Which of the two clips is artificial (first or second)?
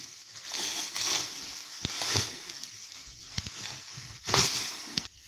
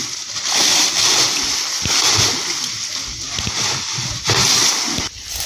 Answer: first